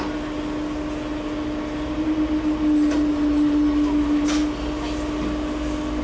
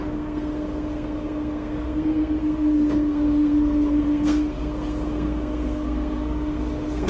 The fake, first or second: second